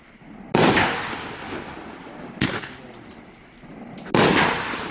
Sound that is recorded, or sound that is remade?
recorded